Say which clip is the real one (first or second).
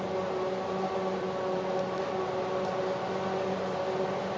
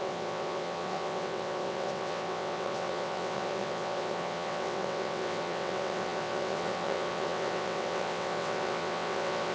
first